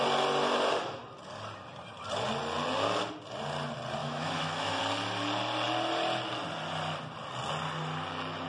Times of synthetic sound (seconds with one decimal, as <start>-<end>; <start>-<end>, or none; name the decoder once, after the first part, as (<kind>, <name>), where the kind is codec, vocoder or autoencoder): 4.0-4.8 (autoencoder, DAC-VAE)